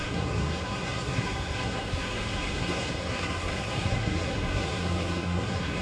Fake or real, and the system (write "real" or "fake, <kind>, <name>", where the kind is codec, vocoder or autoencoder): fake, codec, SNAC